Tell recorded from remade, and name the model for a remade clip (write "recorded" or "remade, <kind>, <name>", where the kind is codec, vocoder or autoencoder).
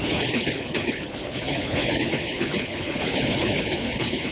remade, codec, HILCodec